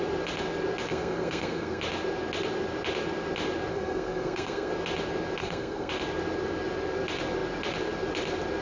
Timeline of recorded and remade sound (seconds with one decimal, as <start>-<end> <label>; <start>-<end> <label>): 0.0-0.9 recorded; 0.9-1.8 remade; 1.8-3.7 recorded; 3.7-4.7 remade; 4.7-5.4 recorded; 5.4-5.9 remade; 5.9-8.6 recorded